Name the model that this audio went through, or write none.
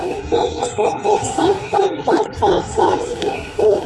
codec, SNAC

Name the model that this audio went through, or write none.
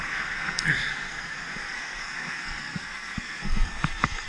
codec, SNAC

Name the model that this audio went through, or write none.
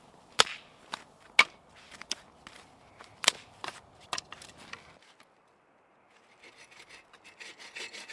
none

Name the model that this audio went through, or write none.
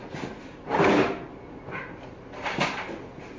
none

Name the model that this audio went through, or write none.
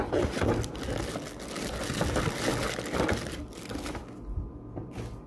none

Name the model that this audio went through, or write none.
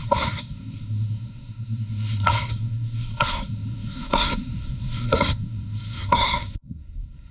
codec, SNAC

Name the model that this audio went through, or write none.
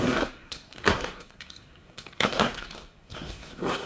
codec, SNAC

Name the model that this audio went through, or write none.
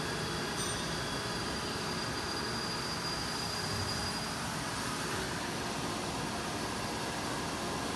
none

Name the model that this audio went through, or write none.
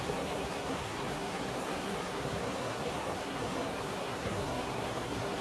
codec, SNAC